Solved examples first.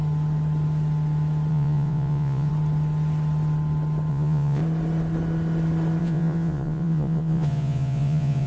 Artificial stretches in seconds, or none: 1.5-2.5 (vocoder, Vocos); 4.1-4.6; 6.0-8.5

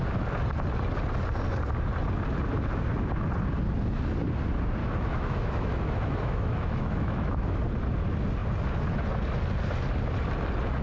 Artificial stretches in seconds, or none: 4.8-7.6 (autoencoder, DAC-VAE)

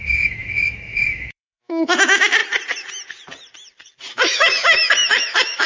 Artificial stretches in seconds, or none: 0.0-2.4 (autoencoder, DAC-VAE); 4.1-5.7

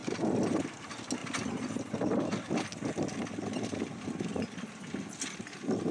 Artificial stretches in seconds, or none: none

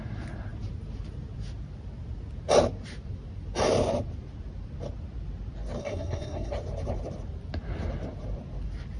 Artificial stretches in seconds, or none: 5.8-6.5 (codec, SNAC)

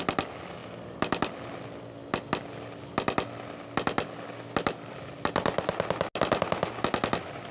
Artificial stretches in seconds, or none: none

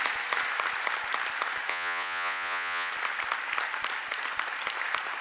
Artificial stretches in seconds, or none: 1.7-2.9 (vocoder, Vocos)

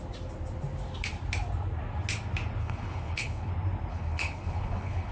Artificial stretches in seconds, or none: 2.6-3.5 (codec, HILCodec); 3.9-5.1